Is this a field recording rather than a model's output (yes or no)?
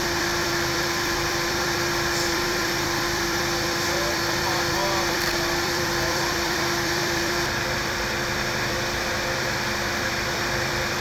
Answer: no